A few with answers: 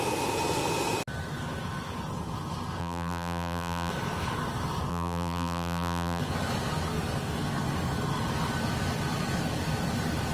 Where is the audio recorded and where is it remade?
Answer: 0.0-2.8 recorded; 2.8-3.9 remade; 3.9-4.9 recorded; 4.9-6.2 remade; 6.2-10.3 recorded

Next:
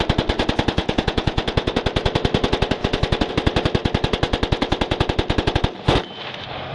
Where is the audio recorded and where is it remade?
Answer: 0.0-0.8 recorded; 0.8-1.7 remade; 1.7-6.7 recorded

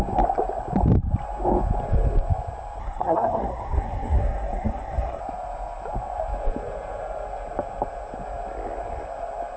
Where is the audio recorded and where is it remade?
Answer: 0.0-2.8 recorded; 2.8-5.2 remade; 5.2-9.6 recorded

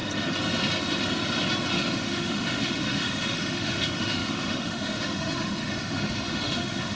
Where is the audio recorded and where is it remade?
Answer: 0.0-1.7 recorded; 1.7-7.0 remade

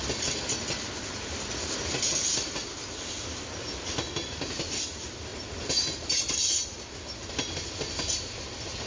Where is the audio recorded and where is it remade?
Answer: 0.0-8.9 recorded

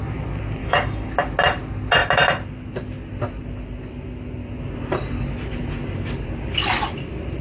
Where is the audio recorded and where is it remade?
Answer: 0.0-0.6 recorded; 0.6-1.1 remade; 1.1-7.4 recorded

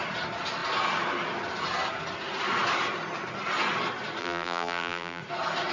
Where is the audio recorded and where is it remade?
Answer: 0.0-4.2 recorded; 4.2-5.2 remade; 5.2-5.7 recorded